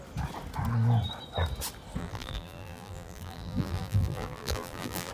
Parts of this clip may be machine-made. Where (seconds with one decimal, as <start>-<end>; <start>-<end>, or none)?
2.0-5.1